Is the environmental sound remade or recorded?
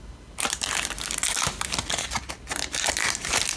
recorded